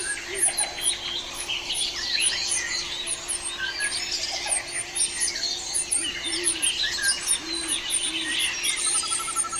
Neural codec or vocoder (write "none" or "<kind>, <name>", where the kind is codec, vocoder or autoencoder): none